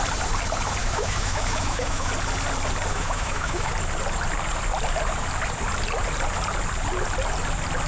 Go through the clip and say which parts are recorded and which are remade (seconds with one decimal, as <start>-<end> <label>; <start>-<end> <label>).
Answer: 0.0-0.8 recorded; 0.8-2.1 remade; 2.1-2.9 recorded; 2.9-3.7 remade; 3.7-7.9 recorded